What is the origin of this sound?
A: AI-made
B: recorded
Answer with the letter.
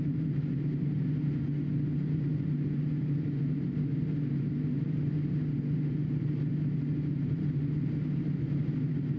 A